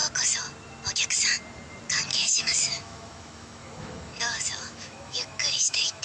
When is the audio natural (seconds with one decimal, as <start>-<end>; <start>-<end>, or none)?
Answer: 0.0-2.1